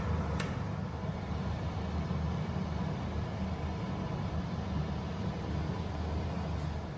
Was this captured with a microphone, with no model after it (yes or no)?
yes